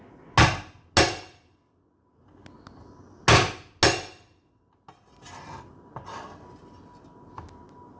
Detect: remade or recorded recorded